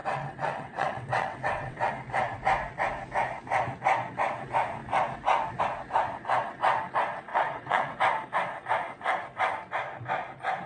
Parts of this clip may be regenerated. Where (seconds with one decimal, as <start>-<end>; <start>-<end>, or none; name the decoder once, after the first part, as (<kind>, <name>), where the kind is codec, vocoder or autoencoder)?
0.0-1.9 (vocoder, WaveNeXt); 7.3-8.0

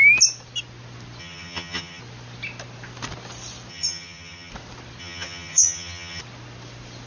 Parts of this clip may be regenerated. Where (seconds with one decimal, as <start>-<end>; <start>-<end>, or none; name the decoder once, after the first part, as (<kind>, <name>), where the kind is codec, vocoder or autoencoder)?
1.2-2.0 (vocoder, HiFi-GAN); 3.7-4.5; 5.0-6.2

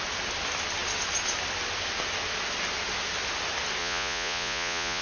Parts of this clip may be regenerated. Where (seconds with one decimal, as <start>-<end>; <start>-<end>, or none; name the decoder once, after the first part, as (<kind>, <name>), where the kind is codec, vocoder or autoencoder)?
3.8-5.0 (vocoder, Vocos)